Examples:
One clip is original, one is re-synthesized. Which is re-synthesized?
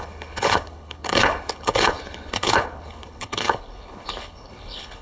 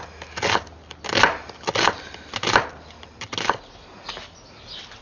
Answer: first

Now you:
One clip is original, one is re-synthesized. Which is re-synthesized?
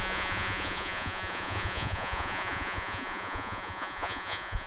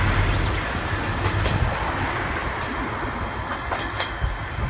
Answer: first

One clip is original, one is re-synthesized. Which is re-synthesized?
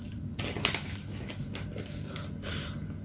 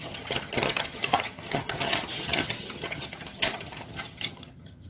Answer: second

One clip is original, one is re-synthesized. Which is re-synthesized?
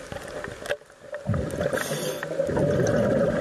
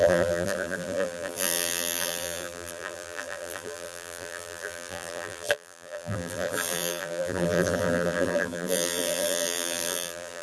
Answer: second